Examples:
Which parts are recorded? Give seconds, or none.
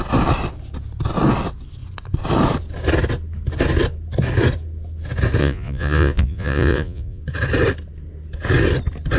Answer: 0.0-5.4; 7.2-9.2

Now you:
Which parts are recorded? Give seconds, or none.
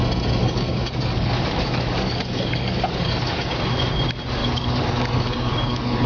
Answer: 0.0-0.4; 3.5-4.4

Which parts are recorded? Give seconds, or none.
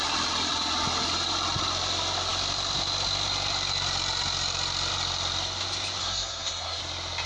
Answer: 0.0-6.0; 6.8-7.3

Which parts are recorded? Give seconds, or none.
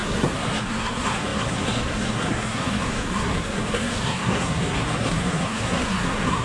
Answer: none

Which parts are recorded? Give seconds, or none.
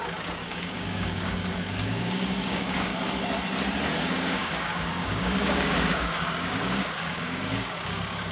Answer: 2.9-4.0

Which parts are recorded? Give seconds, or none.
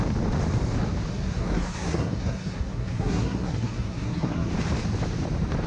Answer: 0.0-1.1; 4.5-5.7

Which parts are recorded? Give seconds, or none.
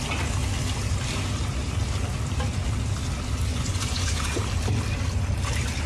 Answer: 0.0-3.5; 4.4-5.9